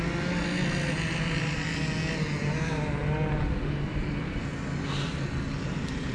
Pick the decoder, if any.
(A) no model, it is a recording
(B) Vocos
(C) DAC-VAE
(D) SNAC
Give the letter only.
A